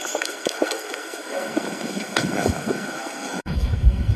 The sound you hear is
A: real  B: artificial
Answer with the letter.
B